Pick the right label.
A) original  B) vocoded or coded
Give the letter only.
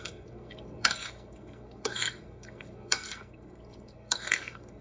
B